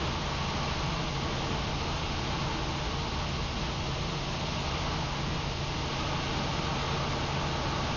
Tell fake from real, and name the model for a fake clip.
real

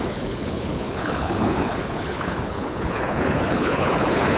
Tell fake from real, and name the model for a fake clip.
fake, codec, HILCodec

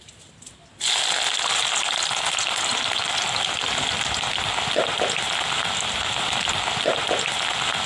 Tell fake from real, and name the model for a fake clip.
real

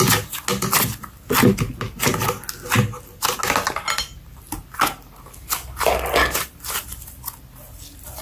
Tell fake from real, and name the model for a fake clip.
real